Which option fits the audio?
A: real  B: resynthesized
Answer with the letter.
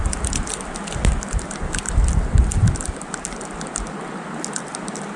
A